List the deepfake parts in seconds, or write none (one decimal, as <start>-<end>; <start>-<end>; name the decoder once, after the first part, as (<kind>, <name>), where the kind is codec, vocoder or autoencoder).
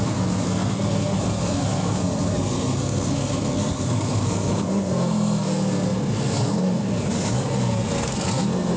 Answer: 0.0-8.8 (codec, SNAC)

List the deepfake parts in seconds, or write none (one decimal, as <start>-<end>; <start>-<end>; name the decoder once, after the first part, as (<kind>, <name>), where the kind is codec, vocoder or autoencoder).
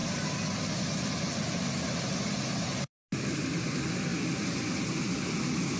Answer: none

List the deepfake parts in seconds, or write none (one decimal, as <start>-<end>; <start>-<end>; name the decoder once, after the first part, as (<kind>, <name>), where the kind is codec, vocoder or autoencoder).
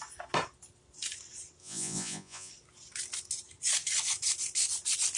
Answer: 1.6-2.5 (vocoder, Vocos)